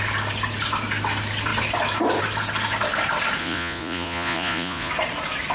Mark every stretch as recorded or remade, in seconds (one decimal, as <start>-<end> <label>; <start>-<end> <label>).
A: 0.0-3.4 recorded; 3.4-4.9 remade; 4.9-5.5 recorded